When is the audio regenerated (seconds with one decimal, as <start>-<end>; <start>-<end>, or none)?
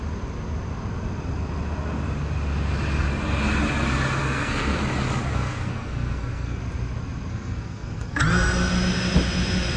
4.2-4.8; 5.3-6.6; 7.3-8.2